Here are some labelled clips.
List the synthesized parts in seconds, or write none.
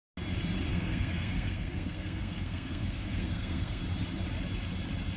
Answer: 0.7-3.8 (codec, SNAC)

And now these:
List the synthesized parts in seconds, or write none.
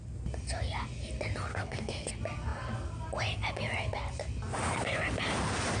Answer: 1.5-2.1 (codec, SNAC)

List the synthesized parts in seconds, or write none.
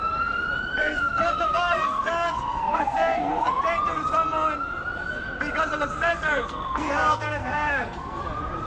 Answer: 0.8-3.6 (codec, SNAC); 6.1-8.2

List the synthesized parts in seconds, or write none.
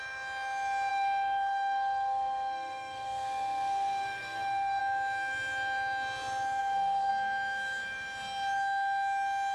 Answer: 0.9-4.8 (codec, SNAC); 6.6-7.1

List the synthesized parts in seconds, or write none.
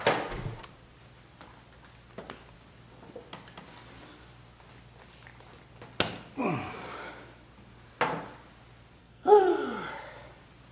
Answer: 9.0-9.5 (codec, SNAC)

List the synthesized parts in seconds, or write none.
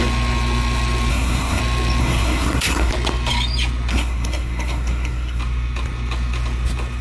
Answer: 1.1-1.6 (codec, SNAC); 2.0-2.9; 3.9-5.4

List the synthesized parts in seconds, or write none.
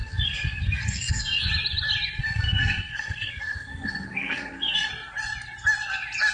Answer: 0.0-1.5 (codec, SNAC); 2.2-4.9